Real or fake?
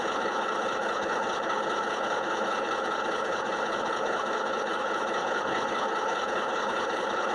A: fake